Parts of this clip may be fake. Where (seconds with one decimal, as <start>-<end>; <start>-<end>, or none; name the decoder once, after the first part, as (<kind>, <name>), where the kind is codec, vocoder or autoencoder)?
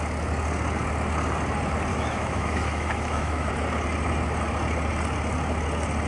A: 1.9-3.5 (autoencoder, DAC-VAE)